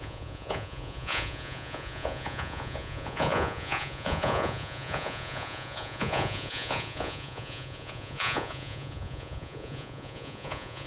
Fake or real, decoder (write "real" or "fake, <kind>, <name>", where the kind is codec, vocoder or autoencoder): fake, vocoder, Vocos